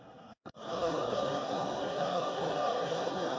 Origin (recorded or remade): remade